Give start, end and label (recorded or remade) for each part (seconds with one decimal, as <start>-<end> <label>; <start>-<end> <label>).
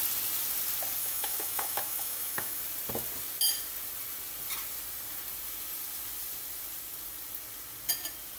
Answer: 0.0-1.0 recorded; 1.0-2.6 remade; 2.6-8.4 recorded